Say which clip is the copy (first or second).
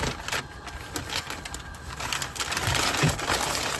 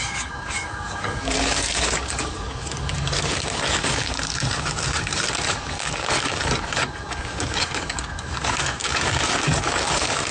second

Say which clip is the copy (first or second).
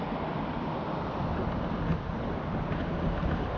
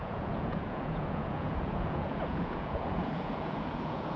second